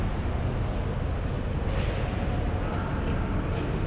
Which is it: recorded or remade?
recorded